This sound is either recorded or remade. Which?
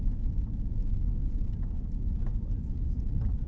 recorded